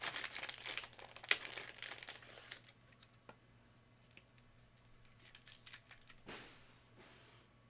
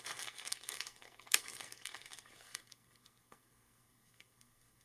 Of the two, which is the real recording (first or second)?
first